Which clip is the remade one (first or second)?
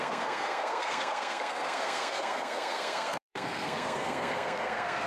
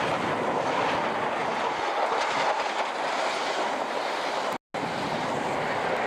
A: first